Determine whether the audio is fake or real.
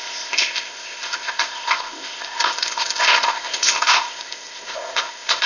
fake